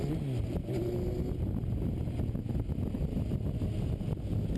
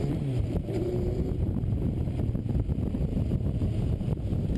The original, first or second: first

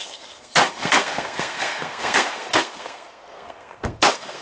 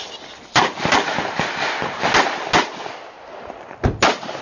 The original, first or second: second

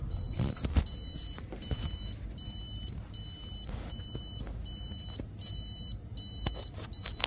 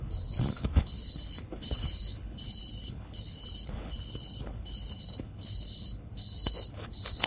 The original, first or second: first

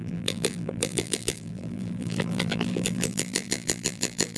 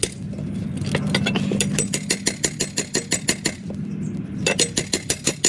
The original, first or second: second